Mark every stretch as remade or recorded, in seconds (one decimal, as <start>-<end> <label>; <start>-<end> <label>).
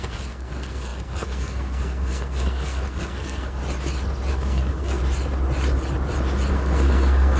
0.0-3.6 remade; 3.6-4.3 recorded; 4.3-5.0 remade; 5.0-6.5 recorded; 6.5-7.4 remade